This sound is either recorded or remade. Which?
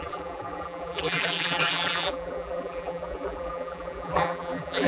remade